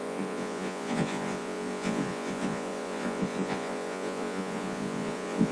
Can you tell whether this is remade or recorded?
remade